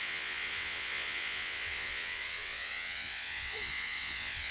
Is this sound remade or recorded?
remade